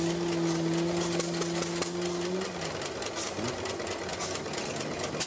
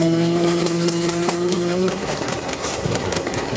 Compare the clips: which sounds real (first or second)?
first